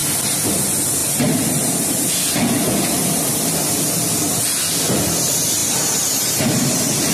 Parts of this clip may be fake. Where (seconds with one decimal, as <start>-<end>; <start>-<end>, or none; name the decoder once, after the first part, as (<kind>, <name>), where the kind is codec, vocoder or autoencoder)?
1.0-2.1 (vocoder, BigVGAN v2); 5.6-7.1